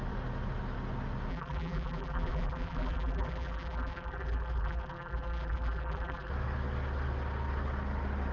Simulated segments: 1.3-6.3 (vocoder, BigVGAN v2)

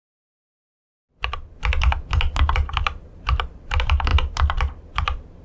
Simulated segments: 3.2-4.1 (vocoder, BigVGAN v2); 4.7-5.4

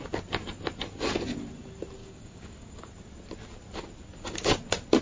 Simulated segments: 2.0-2.8 (codec, DAC)

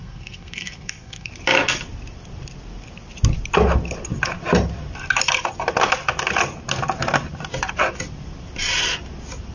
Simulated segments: 0.0-1.3 (codec, SNAC)

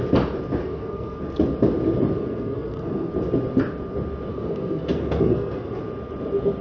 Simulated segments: 0.6-1.2 (codec, SNAC); 2.2-3.1; 4.3-5.8